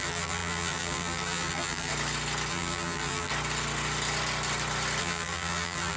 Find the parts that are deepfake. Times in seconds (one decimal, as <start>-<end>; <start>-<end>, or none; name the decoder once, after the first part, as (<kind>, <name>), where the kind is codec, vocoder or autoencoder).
0.0-1.9 (vocoder, BigVGAN v2); 2.5-3.3; 5.0-6.0